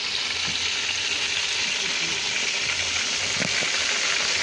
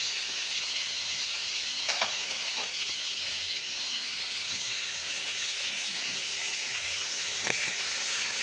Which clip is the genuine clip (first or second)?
first